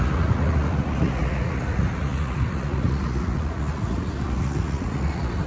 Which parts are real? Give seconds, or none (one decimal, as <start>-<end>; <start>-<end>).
none